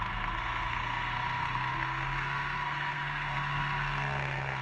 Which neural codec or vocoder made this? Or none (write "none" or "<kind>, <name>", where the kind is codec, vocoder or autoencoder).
codec, SNAC